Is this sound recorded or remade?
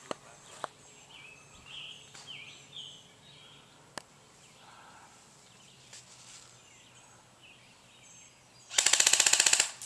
recorded